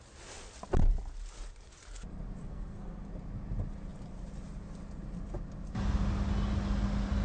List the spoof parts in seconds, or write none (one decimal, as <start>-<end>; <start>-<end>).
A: 2.4-3.0

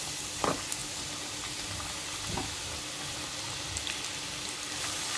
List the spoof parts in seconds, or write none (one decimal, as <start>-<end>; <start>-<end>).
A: none

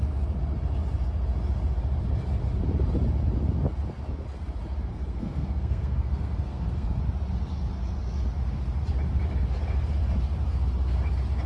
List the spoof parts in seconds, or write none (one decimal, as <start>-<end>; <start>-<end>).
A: 4.9-7.0

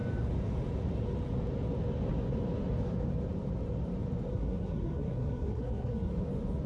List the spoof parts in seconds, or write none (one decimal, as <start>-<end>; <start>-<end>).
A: 4.3-6.1

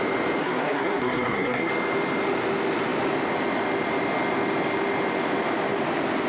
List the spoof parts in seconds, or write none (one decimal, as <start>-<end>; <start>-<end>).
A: 0.4-1.7

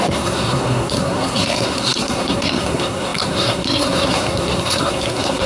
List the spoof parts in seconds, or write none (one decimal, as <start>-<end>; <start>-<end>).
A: 0.0-5.5

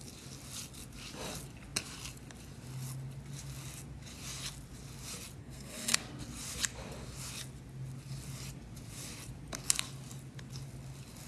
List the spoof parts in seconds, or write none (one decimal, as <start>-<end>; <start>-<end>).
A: 5.4-6.0